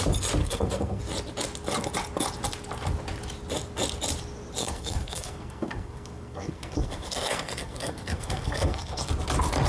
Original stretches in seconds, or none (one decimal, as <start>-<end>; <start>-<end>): 0.0-0.4; 1.0-4.6; 9.1-9.7